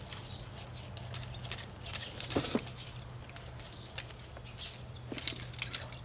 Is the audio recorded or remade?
recorded